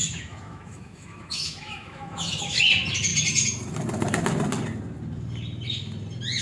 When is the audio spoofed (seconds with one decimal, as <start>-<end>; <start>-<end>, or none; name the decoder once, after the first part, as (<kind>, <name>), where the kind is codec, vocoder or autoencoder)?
0.0-2.6 (autoencoder, DAC-VAE)